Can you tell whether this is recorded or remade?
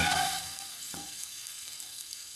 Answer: remade